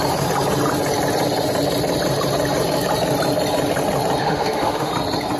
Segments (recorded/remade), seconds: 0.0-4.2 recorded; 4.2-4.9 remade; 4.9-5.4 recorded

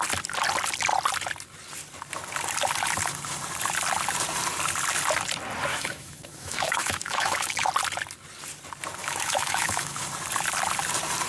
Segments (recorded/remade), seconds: 0.0-5.7 recorded; 5.7-7.7 remade; 7.7-9.0 recorded; 9.0-10.0 remade; 10.0-11.3 recorded